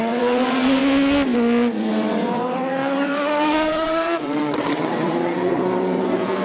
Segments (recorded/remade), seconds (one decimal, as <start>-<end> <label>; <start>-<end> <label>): 0.0-0.8 remade; 0.8-1.9 recorded; 1.9-6.4 remade